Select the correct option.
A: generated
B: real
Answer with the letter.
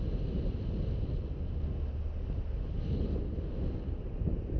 B